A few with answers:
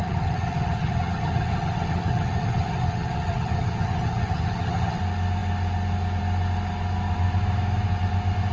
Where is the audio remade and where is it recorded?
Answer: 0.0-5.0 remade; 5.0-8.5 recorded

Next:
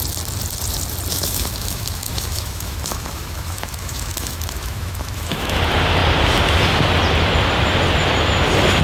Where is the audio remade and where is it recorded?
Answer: 0.0-1.1 recorded; 1.1-5.6 remade; 5.6-8.8 recorded

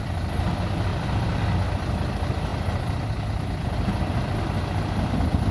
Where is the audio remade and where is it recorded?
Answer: 0.0-0.9 recorded; 0.9-1.9 remade; 1.9-2.5 recorded; 2.5-4.4 remade; 4.4-5.5 recorded

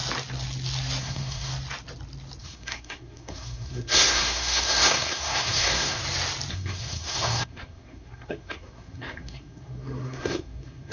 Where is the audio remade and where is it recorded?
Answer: 0.0-1.0 recorded; 1.0-1.5 remade; 1.5-2.4 recorded; 2.4-6.0 remade; 6.0-6.5 recorded; 6.5-10.9 remade

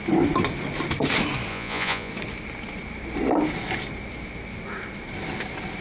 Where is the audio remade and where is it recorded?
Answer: 0.0-1.5 recorded; 1.5-2.1 remade; 2.1-5.8 recorded

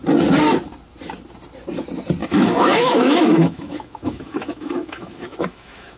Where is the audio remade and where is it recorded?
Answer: 0.0-2.2 recorded; 2.2-6.0 remade

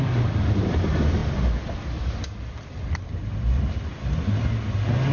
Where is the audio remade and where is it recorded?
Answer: 0.0-5.1 recorded

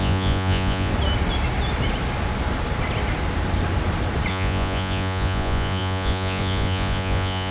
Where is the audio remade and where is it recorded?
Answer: 0.0-0.9 remade; 0.9-4.3 recorded; 4.3-7.5 remade